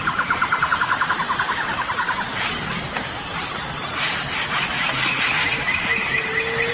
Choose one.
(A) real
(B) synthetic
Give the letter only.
A